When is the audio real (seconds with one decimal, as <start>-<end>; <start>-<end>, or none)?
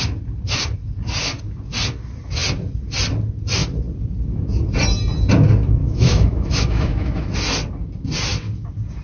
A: 0.0-5.8; 7.3-9.0